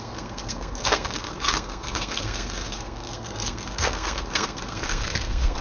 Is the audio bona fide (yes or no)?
no